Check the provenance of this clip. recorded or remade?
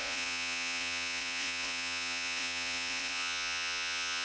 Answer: remade